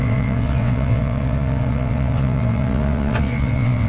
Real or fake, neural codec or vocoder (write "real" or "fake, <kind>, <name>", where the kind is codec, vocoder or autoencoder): fake, vocoder, WaveNeXt